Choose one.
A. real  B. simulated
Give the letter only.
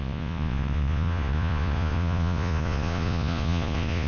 B